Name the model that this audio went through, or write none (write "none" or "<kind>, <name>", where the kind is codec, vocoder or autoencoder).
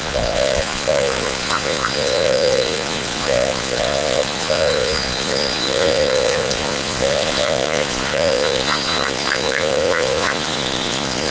vocoder, Vocos